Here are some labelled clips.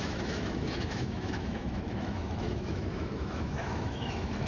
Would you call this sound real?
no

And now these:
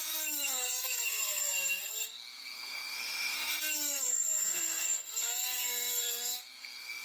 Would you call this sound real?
no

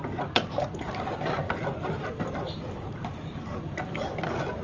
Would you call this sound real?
yes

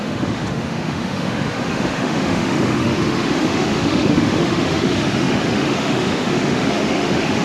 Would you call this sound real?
no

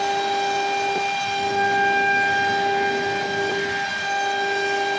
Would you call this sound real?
yes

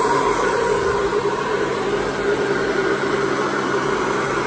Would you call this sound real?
no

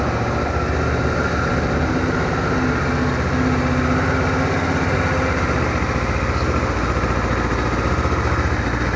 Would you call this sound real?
yes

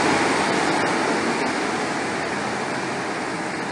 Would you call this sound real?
yes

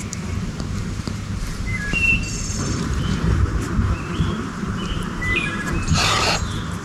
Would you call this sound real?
no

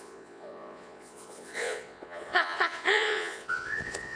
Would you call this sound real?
no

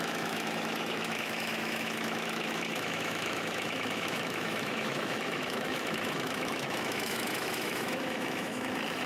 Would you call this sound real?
no